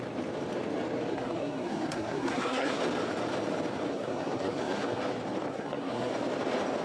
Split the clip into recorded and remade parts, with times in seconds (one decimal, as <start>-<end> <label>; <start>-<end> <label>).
0.0-1.1 recorded; 1.1-2.8 remade; 2.8-3.9 recorded; 3.9-5.0 remade; 5.0-5.5 recorded; 5.5-6.1 remade; 6.1-6.8 recorded